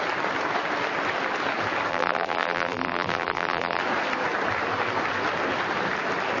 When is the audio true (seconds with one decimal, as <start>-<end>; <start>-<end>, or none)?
0.0-1.9; 3.8-6.4